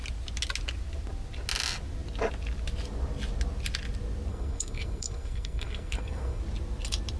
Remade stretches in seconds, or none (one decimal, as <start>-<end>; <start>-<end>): 4.3-6.4